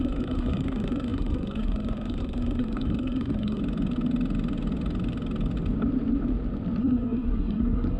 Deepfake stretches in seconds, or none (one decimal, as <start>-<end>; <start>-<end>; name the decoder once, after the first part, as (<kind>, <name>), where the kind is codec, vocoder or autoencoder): 0.0-3.6 (codec, SNAC); 6.8-8.0